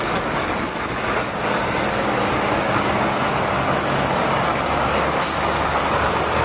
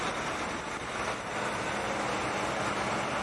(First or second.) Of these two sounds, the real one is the second